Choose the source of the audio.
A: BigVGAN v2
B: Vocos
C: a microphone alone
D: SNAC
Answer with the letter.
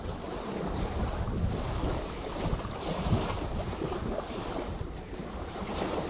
A